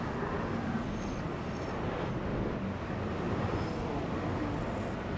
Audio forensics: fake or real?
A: real